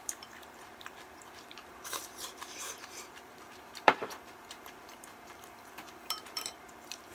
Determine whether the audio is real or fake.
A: fake